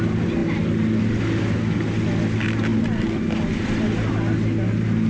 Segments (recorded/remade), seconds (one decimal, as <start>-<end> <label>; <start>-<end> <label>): 0.0-2.7 recorded; 2.7-3.2 remade; 3.2-5.1 recorded